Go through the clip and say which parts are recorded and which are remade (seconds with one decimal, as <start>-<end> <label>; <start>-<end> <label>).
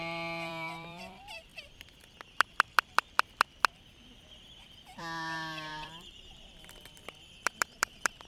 0.0-1.5 remade; 1.5-4.6 recorded; 4.6-8.3 remade